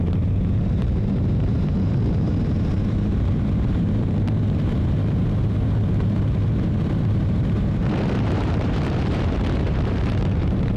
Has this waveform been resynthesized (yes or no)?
yes